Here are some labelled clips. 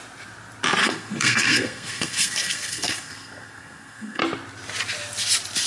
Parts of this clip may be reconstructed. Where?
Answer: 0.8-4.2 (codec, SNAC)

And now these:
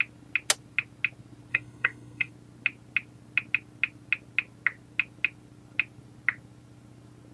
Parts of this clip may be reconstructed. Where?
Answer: 1.5-2.3 (codec, SNAC)

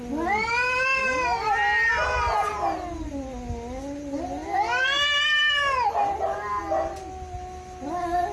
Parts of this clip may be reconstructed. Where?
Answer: none

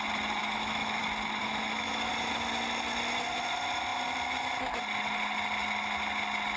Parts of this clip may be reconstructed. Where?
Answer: 0.4-1.0 (autoencoder, DAC-VAE); 1.4-2.1

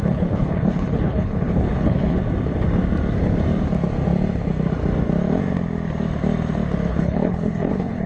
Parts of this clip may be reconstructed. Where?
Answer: 0.0-2.2 (codec, HILCodec); 6.9-8.1

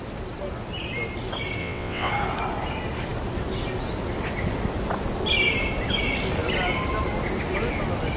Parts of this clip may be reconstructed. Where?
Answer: 1.6-2.1 (vocoder, WaveNeXt)

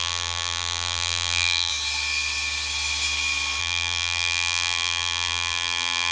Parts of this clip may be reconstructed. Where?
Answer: 0.0-1.7 (vocoder, BigVGAN v2); 3.6-6.1

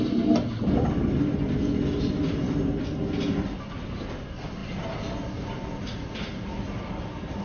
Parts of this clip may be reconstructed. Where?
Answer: none